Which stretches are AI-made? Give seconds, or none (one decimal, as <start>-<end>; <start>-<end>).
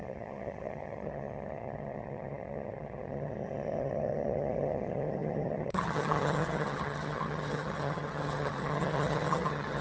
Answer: 0.0-9.8